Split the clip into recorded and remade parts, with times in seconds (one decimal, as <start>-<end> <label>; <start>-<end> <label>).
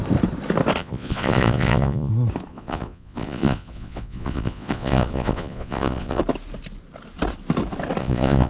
0.0-0.8 recorded; 0.8-2.1 remade; 2.1-2.5 recorded; 2.5-6.2 remade; 6.2-8.0 recorded; 8.0-8.5 remade